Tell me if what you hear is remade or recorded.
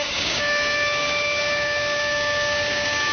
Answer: remade